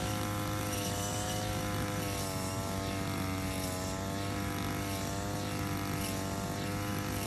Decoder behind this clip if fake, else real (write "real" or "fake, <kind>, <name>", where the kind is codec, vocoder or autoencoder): real